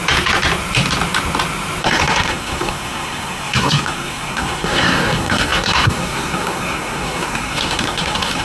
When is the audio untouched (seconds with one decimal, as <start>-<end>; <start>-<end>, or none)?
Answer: 0.0-1.8